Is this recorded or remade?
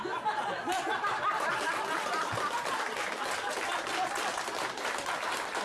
recorded